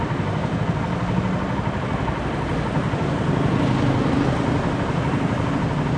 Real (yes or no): yes